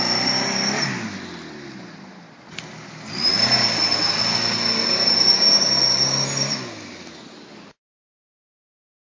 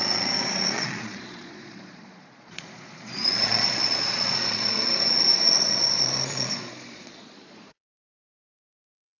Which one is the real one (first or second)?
first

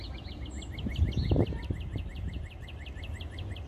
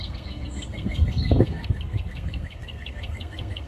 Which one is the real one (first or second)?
first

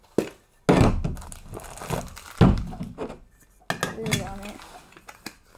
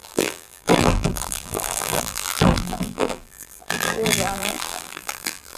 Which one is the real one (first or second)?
first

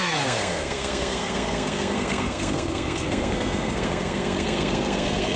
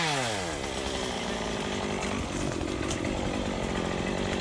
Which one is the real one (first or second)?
second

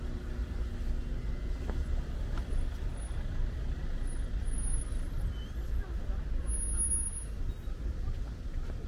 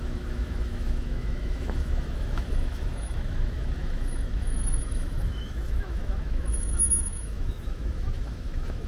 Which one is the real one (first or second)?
first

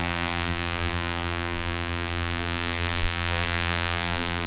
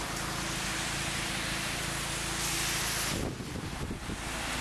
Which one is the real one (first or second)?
second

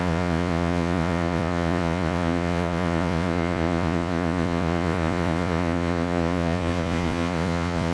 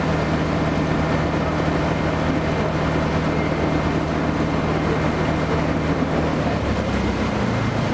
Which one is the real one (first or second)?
second